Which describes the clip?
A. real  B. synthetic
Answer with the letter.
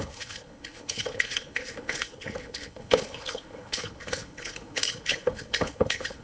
B